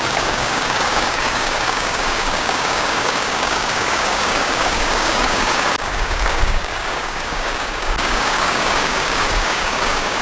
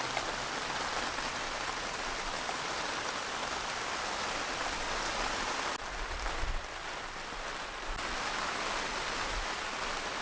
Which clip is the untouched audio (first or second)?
second